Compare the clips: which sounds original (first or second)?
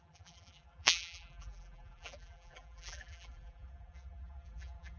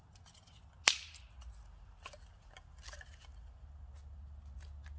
second